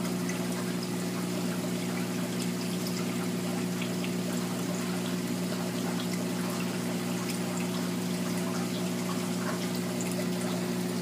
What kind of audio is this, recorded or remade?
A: recorded